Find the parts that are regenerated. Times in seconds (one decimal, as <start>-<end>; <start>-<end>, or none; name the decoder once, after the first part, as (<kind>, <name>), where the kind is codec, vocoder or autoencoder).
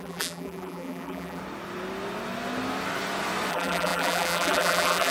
0.0-1.4 (vocoder, BigVGAN v2); 3.5-5.1